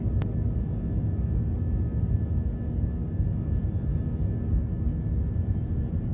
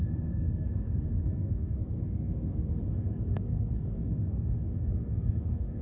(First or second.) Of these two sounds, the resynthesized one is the second